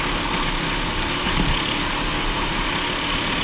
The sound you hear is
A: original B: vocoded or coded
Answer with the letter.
A